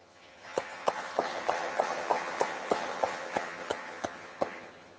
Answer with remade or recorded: remade